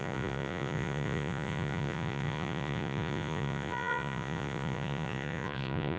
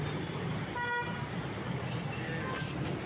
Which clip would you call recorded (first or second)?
second